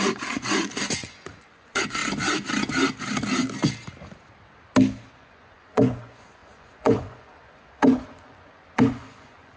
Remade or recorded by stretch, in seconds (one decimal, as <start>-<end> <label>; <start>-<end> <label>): 0.0-2.0 remade; 2.0-5.1 recorded; 5.1-9.6 remade